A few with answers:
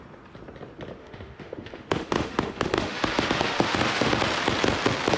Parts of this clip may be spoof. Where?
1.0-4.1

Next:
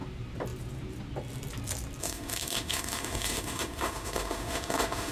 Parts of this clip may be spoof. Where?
2.0-5.1

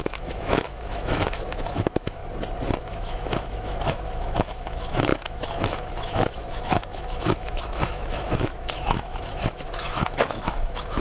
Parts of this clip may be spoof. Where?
0.0-2.2; 2.8-11.0

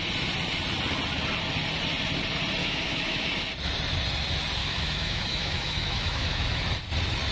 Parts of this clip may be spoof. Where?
2.6-3.3; 4.6-6.6

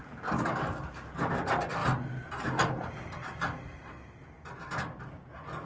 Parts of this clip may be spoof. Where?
none

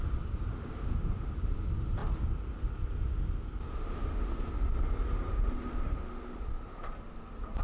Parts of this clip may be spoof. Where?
0.5-1.3; 3.7-4.3; 5.3-6.4

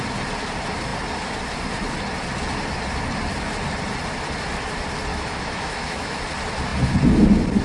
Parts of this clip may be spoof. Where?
5.1-6.2